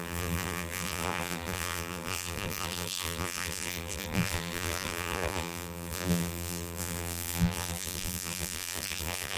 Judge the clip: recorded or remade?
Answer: remade